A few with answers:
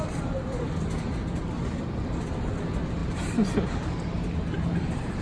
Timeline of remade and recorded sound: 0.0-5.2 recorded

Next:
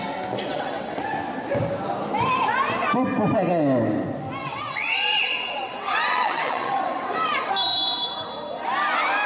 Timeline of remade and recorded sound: 0.0-0.5 recorded; 0.5-1.0 remade; 1.0-4.4 recorded; 4.4-7.5 remade; 7.5-9.3 recorded

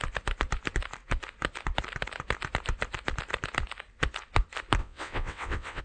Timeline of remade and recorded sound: 0.0-4.8 recorded; 4.8-5.8 remade

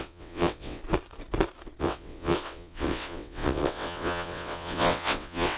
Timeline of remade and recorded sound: 0.0-0.8 remade; 0.8-1.8 recorded; 1.8-5.6 remade

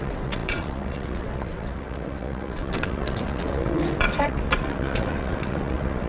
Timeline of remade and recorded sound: 0.0-6.1 remade